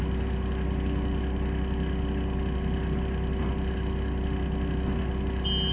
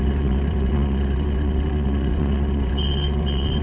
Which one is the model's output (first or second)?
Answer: second